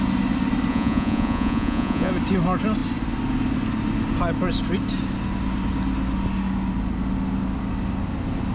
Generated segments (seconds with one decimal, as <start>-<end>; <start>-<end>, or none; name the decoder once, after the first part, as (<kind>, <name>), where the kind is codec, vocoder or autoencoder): 0.7-2.1 (vocoder, Vocos)